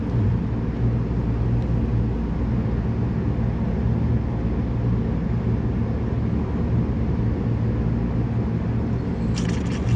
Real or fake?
real